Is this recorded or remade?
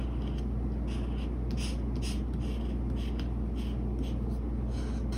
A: recorded